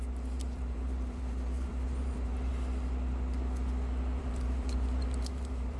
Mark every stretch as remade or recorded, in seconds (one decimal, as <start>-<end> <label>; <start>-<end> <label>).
0.0-2.5 remade; 2.5-4.2 recorded; 4.2-5.8 remade